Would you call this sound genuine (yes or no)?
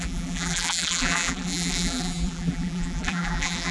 no